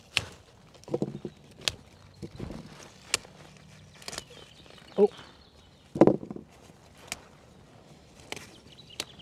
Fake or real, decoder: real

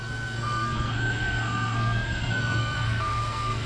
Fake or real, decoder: fake, codec, SNAC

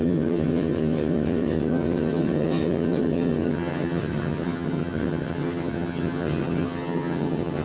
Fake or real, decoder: fake, vocoder, HiFi-GAN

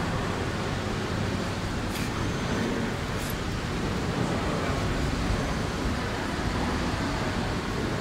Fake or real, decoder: real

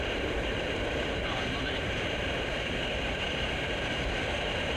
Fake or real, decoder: fake, vocoder, BigVGAN v2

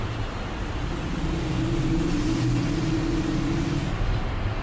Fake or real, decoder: real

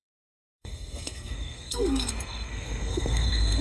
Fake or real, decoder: fake, codec, SNAC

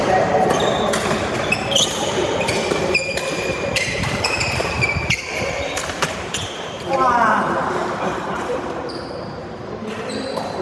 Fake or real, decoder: fake, vocoder, BigVGAN v2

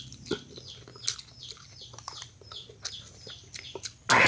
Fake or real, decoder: real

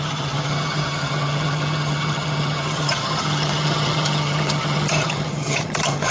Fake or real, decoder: fake, vocoder, HiFi-GAN